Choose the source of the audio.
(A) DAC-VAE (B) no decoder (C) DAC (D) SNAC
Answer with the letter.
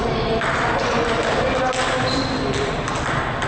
B